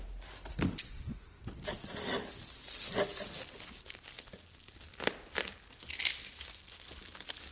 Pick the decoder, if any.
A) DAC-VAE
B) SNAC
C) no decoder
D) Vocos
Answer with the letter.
C